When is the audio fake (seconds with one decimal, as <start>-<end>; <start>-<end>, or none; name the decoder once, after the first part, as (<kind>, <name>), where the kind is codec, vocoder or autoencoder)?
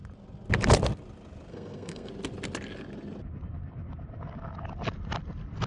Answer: 1.5-2.1 (codec, SNAC)